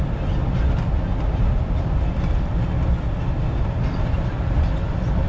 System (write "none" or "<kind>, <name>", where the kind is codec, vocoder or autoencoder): none